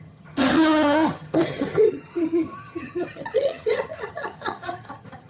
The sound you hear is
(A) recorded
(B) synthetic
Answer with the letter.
B